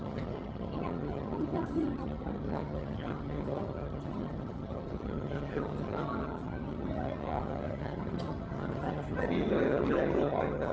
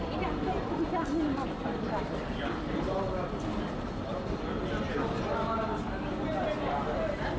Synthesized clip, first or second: first